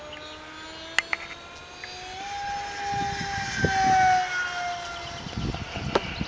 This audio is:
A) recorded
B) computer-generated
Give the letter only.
A